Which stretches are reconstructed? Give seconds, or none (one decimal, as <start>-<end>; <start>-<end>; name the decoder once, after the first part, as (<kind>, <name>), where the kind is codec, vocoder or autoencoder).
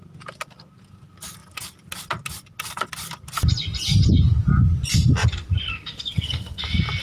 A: 5.7-6.6 (codec, SNAC)